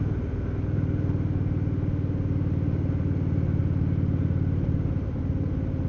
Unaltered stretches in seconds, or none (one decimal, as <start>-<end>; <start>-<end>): 0.0-3.6; 5.3-5.9